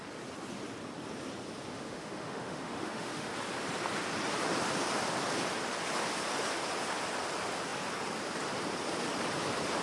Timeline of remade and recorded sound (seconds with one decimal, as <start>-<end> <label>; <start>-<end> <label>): 0.0-1.7 recorded; 1.7-3.3 remade; 3.3-9.8 recorded